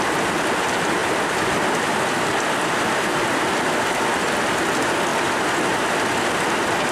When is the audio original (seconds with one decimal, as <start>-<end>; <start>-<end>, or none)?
0.0-1.0; 2.3-5.1; 5.8-6.9